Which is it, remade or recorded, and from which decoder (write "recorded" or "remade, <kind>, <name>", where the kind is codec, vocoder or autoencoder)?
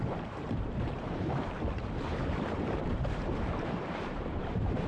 remade, vocoder, BigVGAN v2